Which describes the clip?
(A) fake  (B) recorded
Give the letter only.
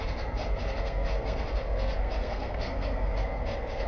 A